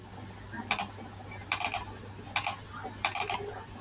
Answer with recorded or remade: recorded